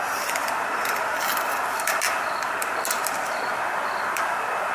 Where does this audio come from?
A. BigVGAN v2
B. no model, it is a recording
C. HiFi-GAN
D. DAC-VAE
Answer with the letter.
B